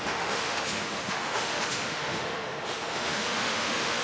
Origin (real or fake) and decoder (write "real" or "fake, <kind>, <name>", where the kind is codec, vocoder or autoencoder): fake, autoencoder, DAC-VAE